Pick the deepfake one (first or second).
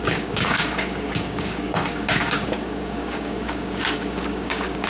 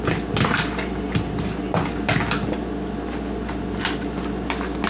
first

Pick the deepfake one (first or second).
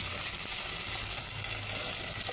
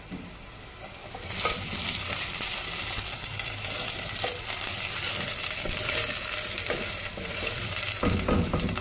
second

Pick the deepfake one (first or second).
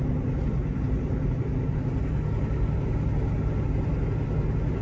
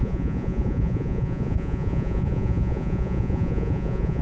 second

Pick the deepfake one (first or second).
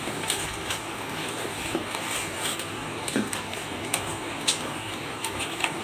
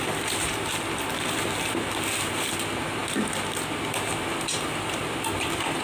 first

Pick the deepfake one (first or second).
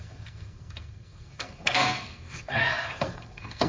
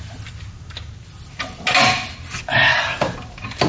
first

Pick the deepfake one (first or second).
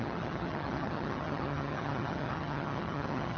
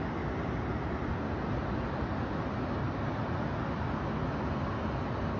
first